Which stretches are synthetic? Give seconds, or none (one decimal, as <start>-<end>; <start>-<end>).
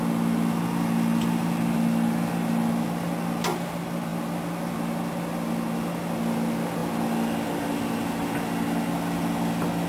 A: none